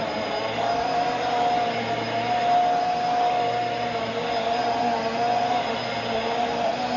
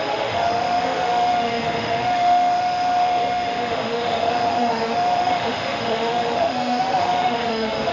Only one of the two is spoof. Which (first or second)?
second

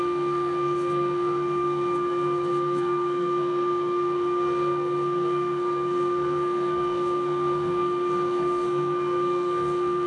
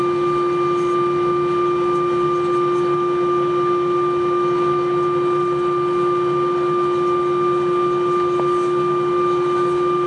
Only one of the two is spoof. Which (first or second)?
first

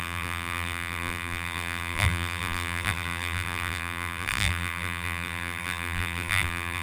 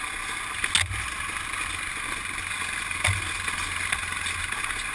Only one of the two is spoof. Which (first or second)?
first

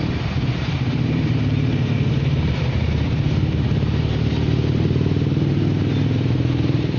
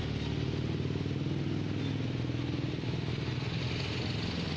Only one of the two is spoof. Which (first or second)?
first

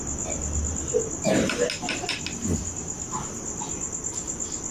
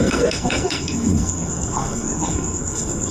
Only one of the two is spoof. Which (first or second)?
second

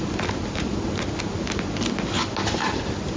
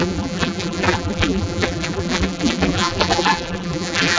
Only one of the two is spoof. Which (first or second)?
second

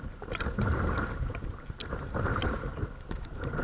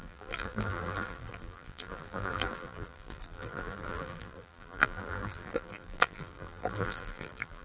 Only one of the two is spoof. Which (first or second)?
second